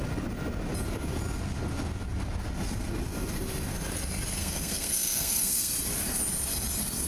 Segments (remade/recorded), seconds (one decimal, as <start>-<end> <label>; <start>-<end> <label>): 0.0-4.4 recorded; 4.4-5.7 remade; 5.7-7.1 recorded